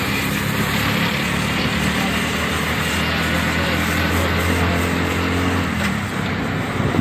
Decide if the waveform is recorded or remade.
recorded